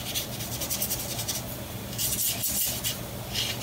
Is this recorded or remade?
recorded